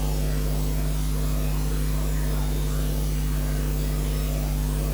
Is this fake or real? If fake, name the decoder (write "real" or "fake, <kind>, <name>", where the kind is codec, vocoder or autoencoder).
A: real